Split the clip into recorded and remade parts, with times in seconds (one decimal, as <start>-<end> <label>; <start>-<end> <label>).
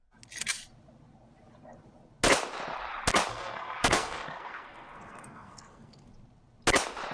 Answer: 0.0-3.3 recorded; 3.3-6.1 remade; 6.1-7.1 recorded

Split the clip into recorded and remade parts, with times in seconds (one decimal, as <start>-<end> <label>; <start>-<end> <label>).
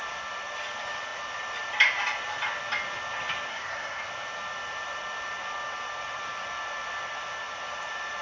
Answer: 0.0-3.5 recorded; 3.5-4.1 remade; 4.1-8.2 recorded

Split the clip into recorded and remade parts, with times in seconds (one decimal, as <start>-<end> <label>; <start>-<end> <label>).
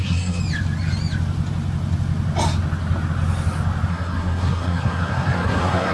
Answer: 0.0-0.4 remade; 0.4-3.9 recorded; 3.9-5.9 remade